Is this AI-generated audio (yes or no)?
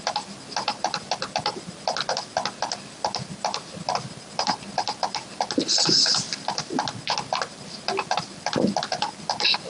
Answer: no